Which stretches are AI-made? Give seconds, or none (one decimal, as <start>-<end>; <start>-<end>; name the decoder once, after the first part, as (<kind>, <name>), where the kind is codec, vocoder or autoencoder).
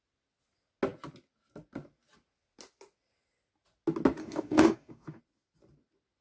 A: 4.2-5.2 (codec, DAC)